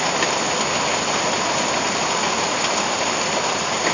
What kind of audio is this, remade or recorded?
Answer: recorded